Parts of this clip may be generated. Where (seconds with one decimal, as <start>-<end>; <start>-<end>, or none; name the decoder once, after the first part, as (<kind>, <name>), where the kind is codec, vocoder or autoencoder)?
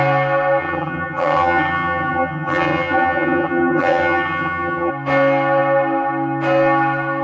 0.6-4.9 (vocoder, HiFi-GAN)